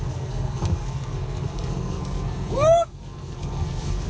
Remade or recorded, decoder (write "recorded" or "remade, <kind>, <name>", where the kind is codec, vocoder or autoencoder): remade, codec, SNAC